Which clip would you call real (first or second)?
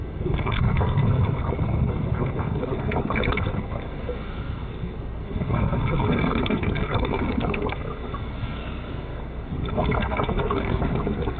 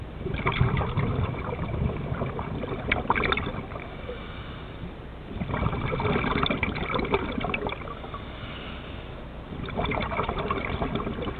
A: second